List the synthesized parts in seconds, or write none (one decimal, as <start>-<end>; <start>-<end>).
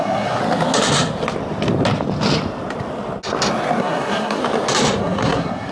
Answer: 0.0-0.4; 3.8-4.4; 5.0-5.7